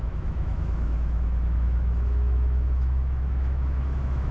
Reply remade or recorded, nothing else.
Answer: remade